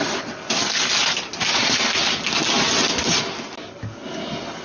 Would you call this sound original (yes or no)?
yes